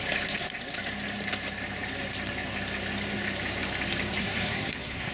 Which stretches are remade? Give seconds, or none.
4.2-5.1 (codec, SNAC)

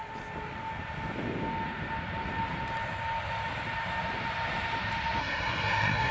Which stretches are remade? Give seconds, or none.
5.2-6.1 (codec, SNAC)

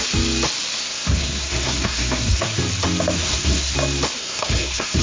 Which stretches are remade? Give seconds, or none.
0.8-2.6 (codec, SNAC); 3.2-3.7; 4.2-5.0

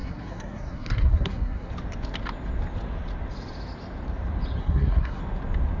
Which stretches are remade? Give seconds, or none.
0.0-1.7 (codec, SNAC); 4.6-5.2

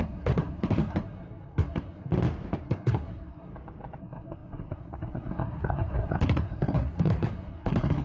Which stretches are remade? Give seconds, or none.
0.0-2.1 (codec, SNAC); 2.6-3.5; 4.0-8.0

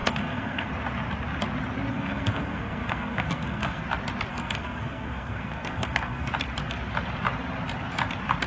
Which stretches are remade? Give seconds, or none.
0.0-0.7 (codec, SNAC); 1.9-3.8; 4.3-6.3